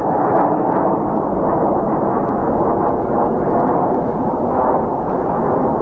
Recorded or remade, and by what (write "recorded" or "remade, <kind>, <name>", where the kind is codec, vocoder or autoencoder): remade, vocoder, BigVGAN v2